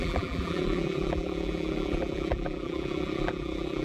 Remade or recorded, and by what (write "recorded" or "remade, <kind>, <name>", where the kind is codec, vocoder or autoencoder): remade, vocoder, BigVGAN v2